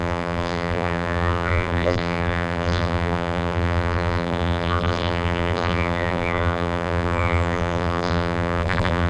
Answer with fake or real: fake